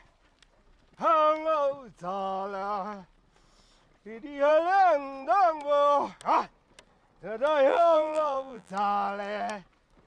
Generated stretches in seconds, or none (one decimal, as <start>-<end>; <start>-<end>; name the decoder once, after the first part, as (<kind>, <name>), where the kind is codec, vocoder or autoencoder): 7.7-8.7 (vocoder, BigVGAN v2)